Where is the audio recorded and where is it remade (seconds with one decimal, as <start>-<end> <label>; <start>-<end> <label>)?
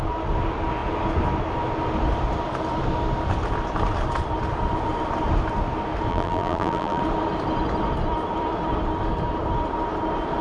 0.0-6.1 recorded; 6.1-7.0 remade; 7.0-10.4 recorded